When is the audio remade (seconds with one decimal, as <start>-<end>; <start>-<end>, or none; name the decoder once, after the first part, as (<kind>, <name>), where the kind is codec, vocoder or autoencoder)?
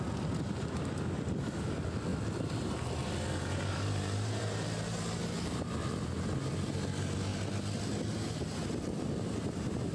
2.1-6.3 (vocoder, BigVGAN v2)